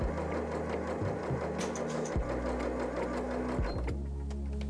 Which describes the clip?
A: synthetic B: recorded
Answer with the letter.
B